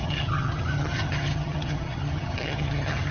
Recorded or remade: remade